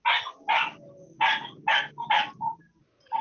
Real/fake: real